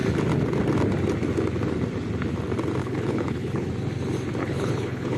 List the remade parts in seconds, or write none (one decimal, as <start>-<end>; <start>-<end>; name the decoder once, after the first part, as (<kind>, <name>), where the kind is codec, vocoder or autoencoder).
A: 2.8-3.7 (codec, HILCodec); 4.4-5.2